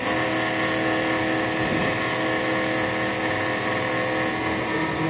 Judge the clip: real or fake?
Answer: real